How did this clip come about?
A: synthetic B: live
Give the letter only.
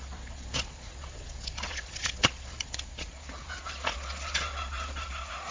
A